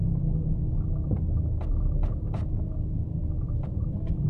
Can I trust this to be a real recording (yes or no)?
yes